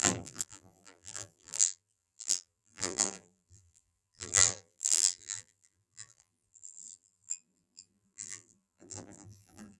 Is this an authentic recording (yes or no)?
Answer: no